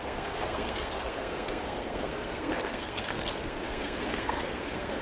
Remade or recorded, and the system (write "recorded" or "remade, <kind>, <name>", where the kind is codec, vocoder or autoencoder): remade, codec, SNAC